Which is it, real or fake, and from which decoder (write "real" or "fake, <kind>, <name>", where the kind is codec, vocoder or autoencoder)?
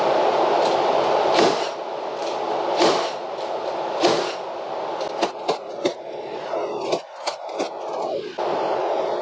real